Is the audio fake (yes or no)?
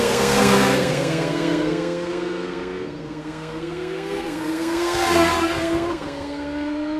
yes